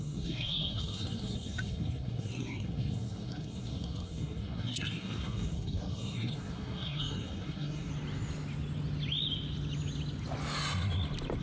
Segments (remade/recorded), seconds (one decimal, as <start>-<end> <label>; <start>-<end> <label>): 0.0-7.9 remade; 7.9-11.4 recorded